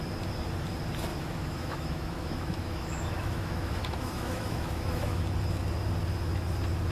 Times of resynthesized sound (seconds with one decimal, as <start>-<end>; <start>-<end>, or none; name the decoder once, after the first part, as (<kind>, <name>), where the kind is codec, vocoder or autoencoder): 1.1-5.2 (autoencoder, DAC-VAE)